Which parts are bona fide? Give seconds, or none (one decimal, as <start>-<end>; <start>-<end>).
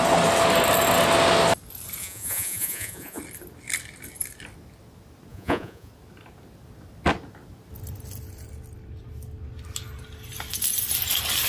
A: 0.0-2.0; 3.2-5.3; 5.9-11.5